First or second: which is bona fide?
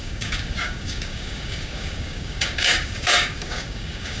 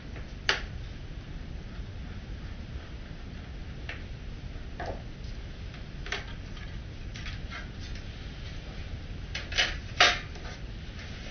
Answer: second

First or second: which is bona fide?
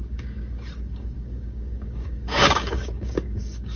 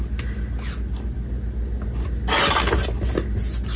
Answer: second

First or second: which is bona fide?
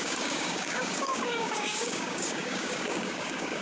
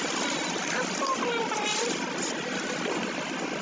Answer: second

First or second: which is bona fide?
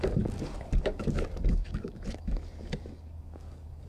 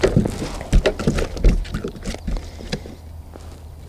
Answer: second